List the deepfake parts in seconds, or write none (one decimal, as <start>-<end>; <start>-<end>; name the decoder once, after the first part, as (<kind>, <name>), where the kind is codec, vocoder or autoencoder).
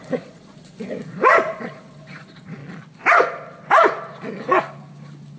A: 0.0-2.6 (vocoder, Vocos)